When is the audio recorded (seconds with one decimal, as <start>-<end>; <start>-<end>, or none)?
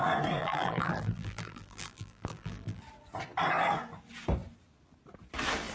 0.0-0.4; 2.8-5.7